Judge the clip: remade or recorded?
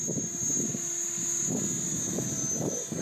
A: recorded